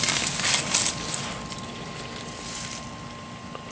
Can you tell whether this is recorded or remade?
recorded